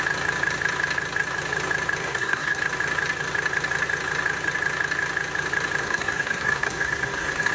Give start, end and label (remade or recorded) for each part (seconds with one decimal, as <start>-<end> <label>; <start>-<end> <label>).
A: 0.0-2.0 recorded; 2.0-2.6 remade; 2.6-5.8 recorded; 5.8-7.5 remade